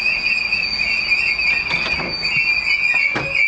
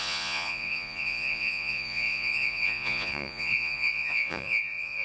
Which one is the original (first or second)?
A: first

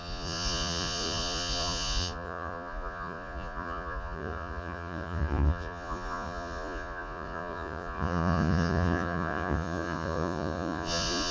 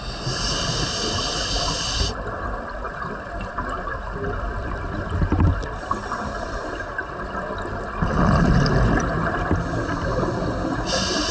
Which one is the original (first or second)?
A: second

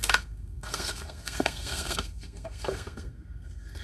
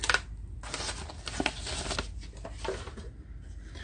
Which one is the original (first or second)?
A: second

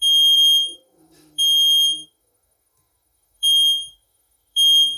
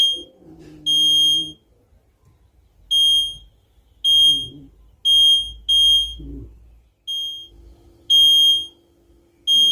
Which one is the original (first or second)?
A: second